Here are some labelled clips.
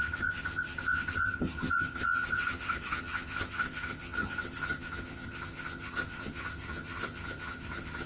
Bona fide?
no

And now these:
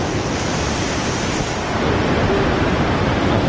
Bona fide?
yes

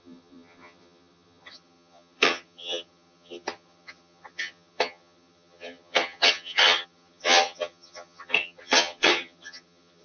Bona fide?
no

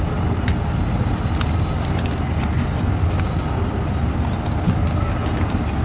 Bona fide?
yes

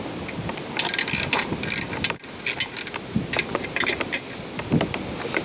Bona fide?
yes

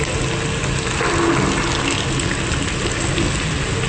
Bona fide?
yes